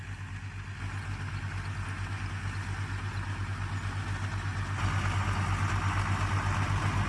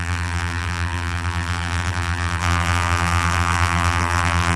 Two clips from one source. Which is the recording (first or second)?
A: first